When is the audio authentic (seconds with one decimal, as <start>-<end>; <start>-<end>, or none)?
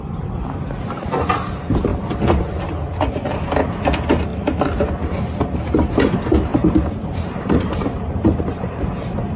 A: 0.0-6.5; 8.9-9.4